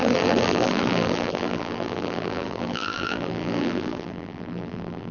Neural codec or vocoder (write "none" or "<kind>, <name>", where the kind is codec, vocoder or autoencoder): vocoder, BigVGAN v2